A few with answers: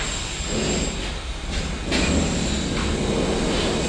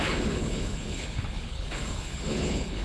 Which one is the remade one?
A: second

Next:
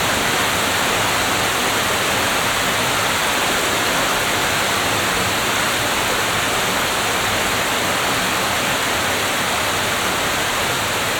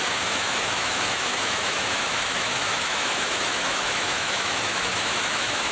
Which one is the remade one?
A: second